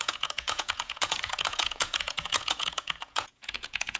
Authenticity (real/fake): fake